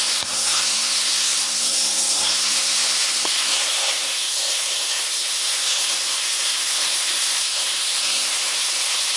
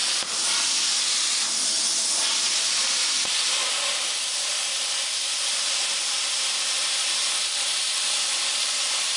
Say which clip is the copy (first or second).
first